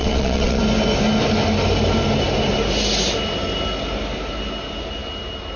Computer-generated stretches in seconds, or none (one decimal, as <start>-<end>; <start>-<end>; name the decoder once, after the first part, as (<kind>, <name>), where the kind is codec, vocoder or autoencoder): 0.0-0.6 (vocoder, WaveNeXt)

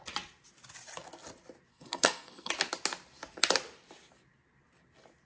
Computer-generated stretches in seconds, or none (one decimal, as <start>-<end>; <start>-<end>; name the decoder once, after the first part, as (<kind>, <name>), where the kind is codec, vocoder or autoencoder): 1.7-2.5 (codec, SNAC)

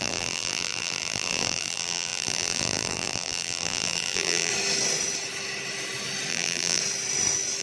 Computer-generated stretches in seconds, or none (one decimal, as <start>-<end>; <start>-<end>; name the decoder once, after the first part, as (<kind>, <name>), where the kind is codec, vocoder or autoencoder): 0.0-4.5 (vocoder, BigVGAN v2); 6.3-6.8